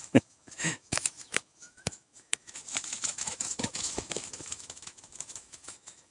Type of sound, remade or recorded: remade